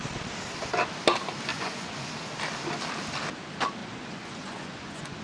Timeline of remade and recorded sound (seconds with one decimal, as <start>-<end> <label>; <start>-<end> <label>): 0.0-1.5 recorded; 1.5-2.1 remade; 2.1-3.8 recorded; 3.8-5.2 remade